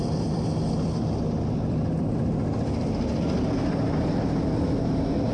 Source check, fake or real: real